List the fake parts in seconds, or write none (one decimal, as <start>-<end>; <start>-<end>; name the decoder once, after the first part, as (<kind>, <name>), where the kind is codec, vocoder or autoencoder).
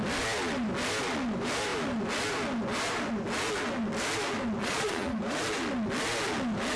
4.6-5.2 (vocoder, Vocos)